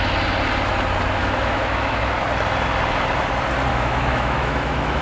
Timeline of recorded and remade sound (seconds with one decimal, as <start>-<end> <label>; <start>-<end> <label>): 0.0-1.2 recorded; 1.2-2.0 remade; 2.0-3.7 recorded; 3.7-5.0 remade